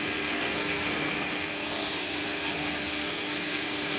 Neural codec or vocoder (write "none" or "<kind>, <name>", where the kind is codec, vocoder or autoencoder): codec, SNAC